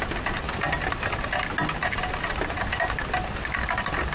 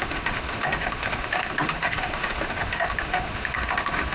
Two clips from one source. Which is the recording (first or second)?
first